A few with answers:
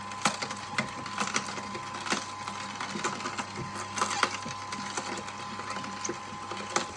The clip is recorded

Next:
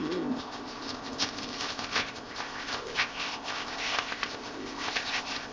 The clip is remade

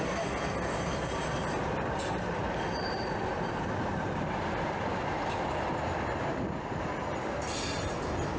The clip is recorded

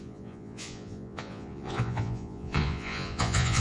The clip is remade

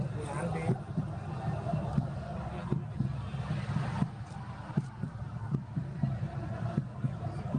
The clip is recorded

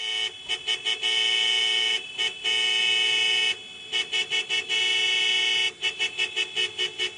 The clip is recorded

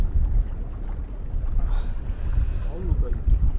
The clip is recorded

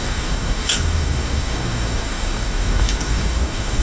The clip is remade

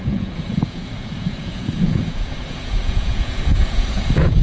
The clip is remade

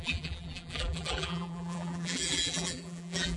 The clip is remade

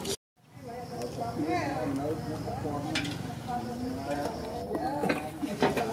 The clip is recorded